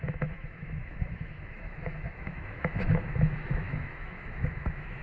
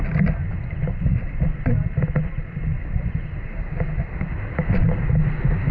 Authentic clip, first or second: second